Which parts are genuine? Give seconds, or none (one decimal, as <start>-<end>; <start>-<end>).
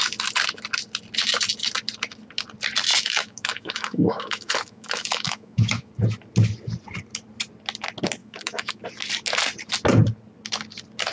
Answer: 0.0-2.9; 5.9-8.2; 8.8-11.1